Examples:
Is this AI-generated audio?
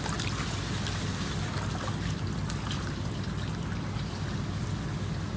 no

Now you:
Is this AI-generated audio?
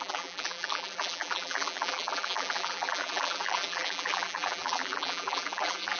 yes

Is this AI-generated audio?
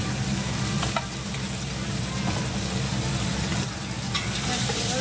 no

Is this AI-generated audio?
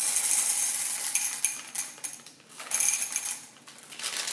no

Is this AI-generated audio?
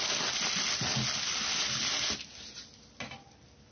no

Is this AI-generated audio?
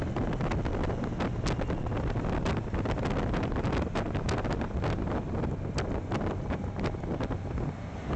no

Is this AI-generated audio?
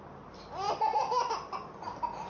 no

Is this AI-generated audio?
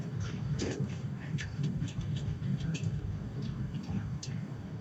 yes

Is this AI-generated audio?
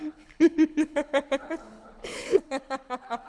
yes